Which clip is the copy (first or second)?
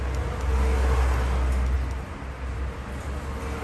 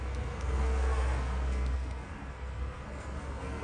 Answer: second